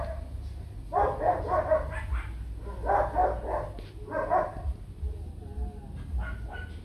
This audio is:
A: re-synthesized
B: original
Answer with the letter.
B